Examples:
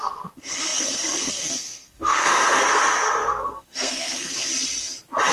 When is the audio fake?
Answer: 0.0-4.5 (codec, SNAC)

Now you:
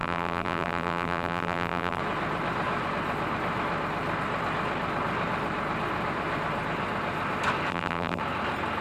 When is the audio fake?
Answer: 0.0-2.0 (vocoder, BigVGAN v2); 7.7-8.2

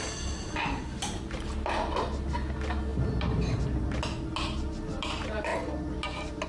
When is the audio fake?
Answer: none

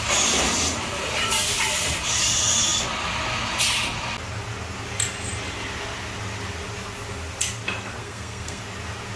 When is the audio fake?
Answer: 8.0-8.6 (codec, SNAC)

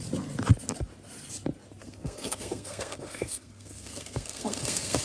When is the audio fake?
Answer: 1.8-5.0 (codec, SNAC)

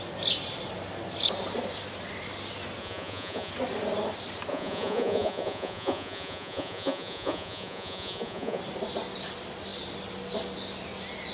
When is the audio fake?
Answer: 2.8-3.5 (vocoder, Vocos); 4.5-8.6

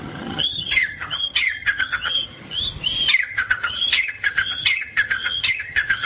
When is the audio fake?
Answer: 0.0-2.6 (vocoder, HiFi-GAN); 3.2-6.1

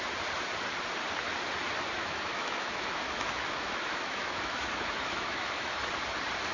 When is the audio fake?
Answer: 2.0-5.9 (autoencoder, DAC-VAE)